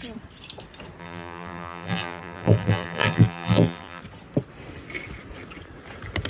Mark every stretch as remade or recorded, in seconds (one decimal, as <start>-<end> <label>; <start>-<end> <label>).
0.0-1.0 recorded; 1.0-4.0 remade; 4.0-6.3 recorded